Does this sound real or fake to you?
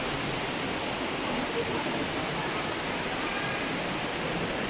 fake